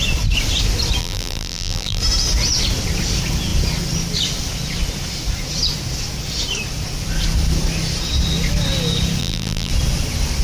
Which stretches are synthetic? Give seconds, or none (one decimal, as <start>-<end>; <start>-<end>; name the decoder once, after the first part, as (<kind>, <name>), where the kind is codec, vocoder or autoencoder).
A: 1.0-2.0 (vocoder, BigVGAN v2); 9.2-9.7